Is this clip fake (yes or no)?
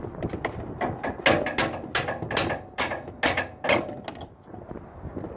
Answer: no